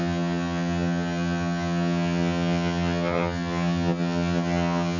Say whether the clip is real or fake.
fake